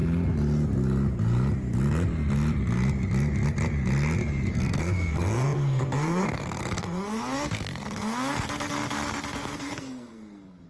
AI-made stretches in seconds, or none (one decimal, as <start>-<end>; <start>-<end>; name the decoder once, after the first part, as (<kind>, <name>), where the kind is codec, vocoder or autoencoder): 4.5-10.7 (codec, SNAC)